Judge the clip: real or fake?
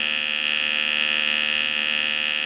real